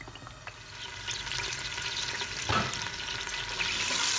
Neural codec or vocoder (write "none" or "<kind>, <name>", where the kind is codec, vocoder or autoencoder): none